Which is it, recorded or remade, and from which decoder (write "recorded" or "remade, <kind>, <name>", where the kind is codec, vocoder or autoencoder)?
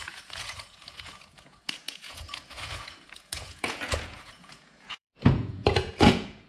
remade, vocoder, Vocos